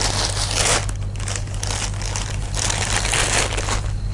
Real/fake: real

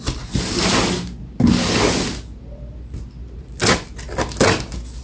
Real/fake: real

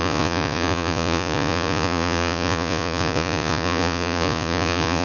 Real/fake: fake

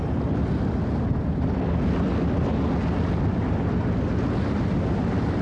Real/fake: real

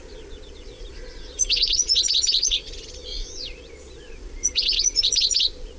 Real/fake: fake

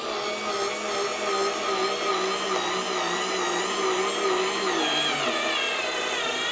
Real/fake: real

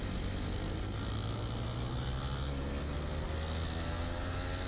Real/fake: real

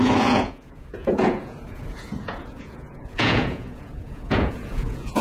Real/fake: fake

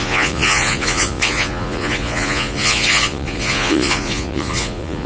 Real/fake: fake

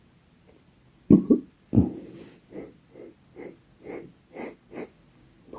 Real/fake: real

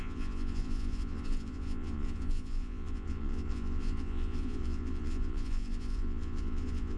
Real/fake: fake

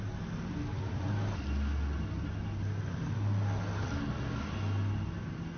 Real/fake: real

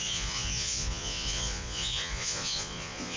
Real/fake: fake